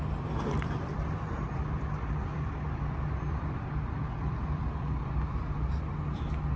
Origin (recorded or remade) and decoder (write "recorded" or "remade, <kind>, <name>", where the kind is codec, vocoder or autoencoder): remade, vocoder, BigVGAN v2